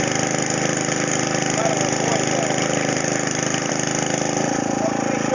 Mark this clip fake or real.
real